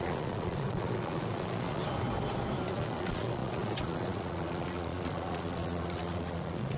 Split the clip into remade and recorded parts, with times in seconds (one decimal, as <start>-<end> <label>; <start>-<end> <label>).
0.0-1.8 remade; 1.8-2.7 recorded; 2.7-6.8 remade